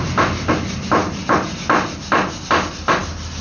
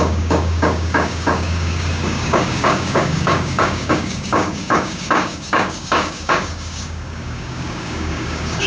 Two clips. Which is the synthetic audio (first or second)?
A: second